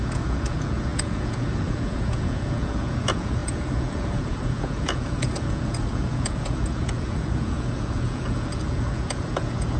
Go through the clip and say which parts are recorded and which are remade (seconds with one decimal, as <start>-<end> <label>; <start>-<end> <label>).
0.0-9.8 remade

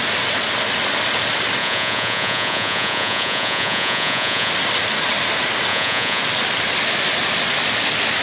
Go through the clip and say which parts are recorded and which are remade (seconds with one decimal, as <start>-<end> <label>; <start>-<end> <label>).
0.0-1.6 recorded; 1.6-4.5 remade; 4.5-5.7 recorded; 5.7-6.2 remade; 6.2-8.2 recorded